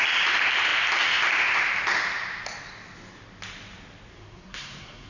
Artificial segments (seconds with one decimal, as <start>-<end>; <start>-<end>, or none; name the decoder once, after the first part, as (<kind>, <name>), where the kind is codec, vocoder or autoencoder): 4.1-5.1 (codec, SNAC)